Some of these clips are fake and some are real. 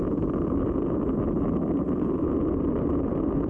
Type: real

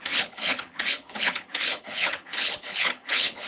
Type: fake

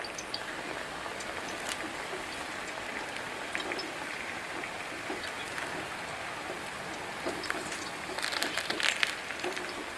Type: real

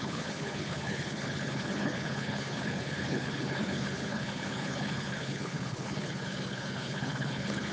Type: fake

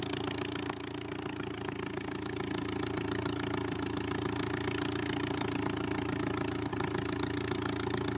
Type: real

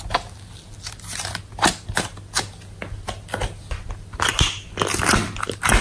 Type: real